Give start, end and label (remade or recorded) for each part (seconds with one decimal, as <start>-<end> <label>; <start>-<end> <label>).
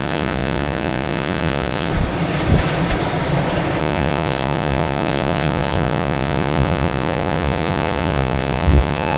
0.0-1.9 remade; 1.9-3.8 recorded; 3.8-9.2 remade